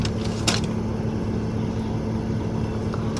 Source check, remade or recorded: recorded